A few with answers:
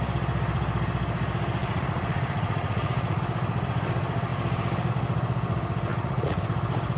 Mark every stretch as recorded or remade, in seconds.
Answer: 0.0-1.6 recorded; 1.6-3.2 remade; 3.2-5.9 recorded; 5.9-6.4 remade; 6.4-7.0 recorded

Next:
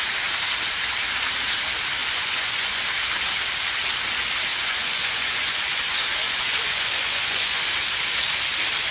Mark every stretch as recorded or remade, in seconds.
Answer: 0.0-2.0 recorded; 2.0-2.8 remade; 2.8-4.5 recorded; 4.5-7.7 remade; 7.7-8.9 recorded

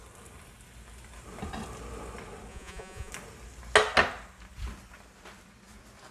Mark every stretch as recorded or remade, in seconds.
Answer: 0.0-2.5 recorded; 2.5-3.1 remade; 3.1-6.1 recorded

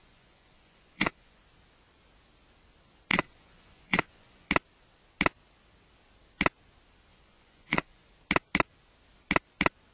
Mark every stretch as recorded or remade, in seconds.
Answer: 0.0-1.4 remade; 1.4-3.1 recorded; 3.1-4.5 remade; 4.5-7.1 recorded; 7.1-8.1 remade; 8.1-9.9 recorded